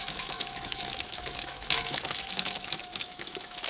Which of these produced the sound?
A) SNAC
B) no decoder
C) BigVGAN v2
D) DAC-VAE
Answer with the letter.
D